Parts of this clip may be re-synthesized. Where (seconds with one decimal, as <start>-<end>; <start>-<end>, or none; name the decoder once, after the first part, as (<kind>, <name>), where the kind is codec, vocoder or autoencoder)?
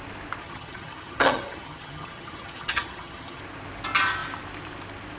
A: 0.4-3.4 (vocoder, HiFi-GAN)